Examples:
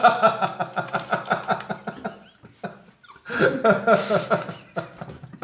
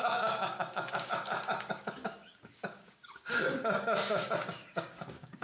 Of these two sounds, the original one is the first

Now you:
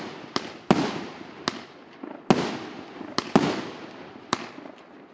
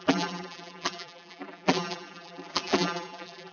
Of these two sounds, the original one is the first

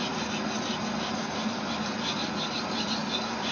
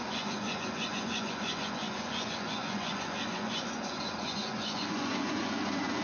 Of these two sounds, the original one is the first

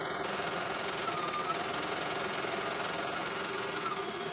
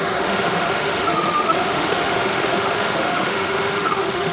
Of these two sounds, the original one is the first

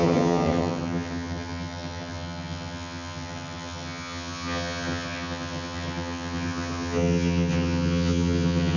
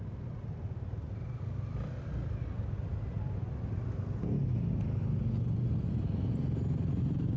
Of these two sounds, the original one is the second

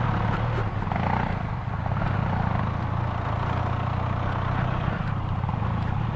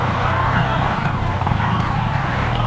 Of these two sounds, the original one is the first